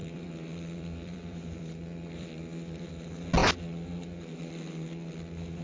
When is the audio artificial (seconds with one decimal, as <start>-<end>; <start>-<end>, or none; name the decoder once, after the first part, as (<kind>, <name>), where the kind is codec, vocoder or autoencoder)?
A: 0.0-2.9 (vocoder, BigVGAN v2)